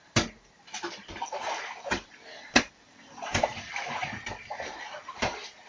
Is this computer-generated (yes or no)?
yes